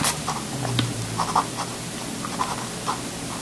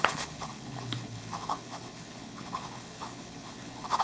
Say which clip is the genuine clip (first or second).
first